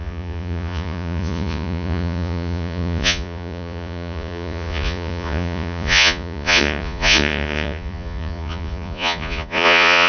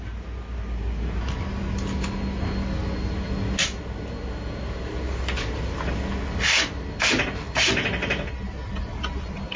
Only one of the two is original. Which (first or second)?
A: second